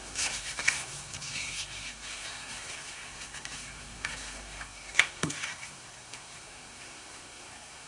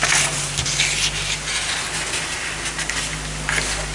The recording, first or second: second